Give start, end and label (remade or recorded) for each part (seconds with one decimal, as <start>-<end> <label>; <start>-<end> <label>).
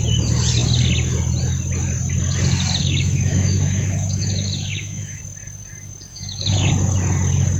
0.0-2.8 recorded; 2.8-5.2 remade; 5.2-6.1 recorded; 6.1-6.7 remade; 6.7-7.6 recorded